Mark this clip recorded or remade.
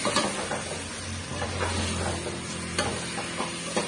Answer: recorded